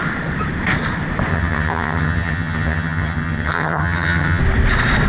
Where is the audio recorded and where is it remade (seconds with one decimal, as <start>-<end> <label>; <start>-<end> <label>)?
0.0-1.3 recorded; 1.3-4.4 remade; 4.4-5.1 recorded